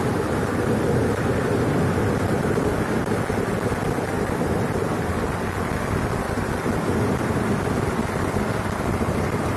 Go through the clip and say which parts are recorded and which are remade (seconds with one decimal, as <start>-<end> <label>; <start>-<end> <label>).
0.0-9.6 recorded